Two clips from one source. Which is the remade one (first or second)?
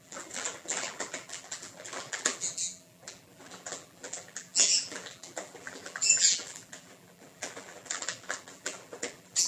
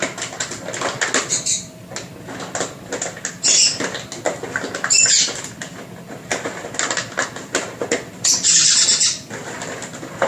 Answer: first